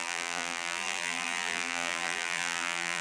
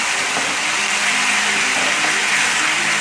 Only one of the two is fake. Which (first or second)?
first